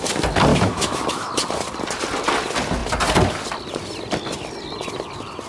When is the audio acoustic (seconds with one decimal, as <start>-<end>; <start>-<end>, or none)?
0.0-0.5; 1.3-5.5